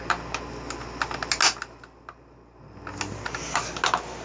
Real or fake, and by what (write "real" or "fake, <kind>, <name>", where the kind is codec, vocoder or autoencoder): real